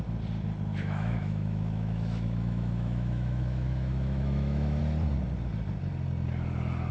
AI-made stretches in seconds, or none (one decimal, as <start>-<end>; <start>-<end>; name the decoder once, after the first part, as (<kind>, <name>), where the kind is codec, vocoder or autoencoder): 0.7-4.8 (autoencoder, DAC-VAE)

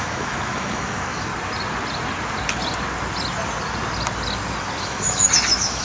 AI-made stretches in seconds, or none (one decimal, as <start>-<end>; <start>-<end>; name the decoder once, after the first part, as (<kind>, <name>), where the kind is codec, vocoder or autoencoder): 0.0-1.3 (autoencoder, DAC-VAE); 4.8-5.8

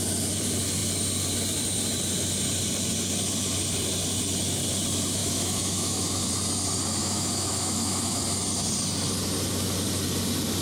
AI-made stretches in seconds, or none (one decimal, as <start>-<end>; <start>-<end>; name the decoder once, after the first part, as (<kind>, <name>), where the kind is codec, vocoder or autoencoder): 5.2-6.3 (autoencoder, DAC-VAE); 7.0-8.2